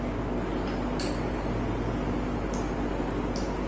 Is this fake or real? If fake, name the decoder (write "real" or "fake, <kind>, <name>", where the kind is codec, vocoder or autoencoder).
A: real